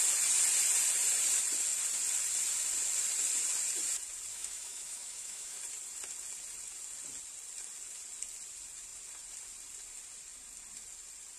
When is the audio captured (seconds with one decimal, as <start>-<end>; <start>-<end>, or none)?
0.0-4.3; 5.6-11.4